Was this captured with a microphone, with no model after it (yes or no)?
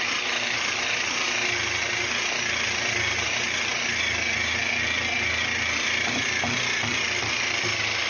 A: yes